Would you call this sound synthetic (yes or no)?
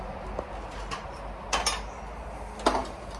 no